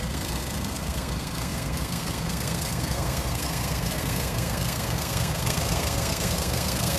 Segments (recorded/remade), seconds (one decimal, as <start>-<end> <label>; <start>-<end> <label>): 0.0-7.0 remade